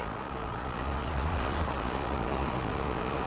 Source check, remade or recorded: remade